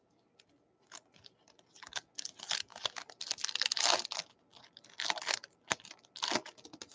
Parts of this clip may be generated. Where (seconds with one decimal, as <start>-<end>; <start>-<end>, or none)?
none